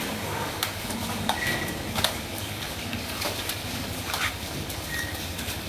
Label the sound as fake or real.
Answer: fake